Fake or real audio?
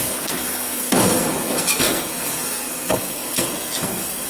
fake